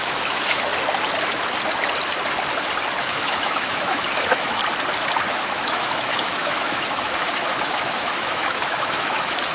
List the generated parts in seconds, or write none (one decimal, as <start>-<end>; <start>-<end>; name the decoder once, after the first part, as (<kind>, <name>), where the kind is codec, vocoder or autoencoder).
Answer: 0.0-0.7 (autoencoder, DAC-VAE); 3.0-4.6; 5.3-9.5